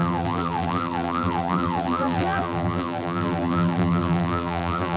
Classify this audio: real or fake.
fake